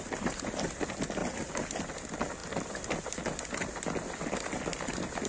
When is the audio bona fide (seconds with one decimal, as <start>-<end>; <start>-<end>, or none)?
0.0-5.3